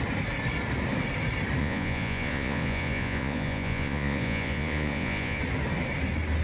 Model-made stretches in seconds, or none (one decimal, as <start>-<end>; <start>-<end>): 1.6-5.4